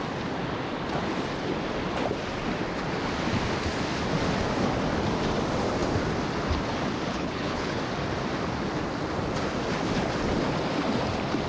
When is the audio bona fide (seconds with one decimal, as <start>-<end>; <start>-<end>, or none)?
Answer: 0.0-7.1; 7.8-11.5